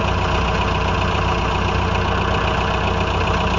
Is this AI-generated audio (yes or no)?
no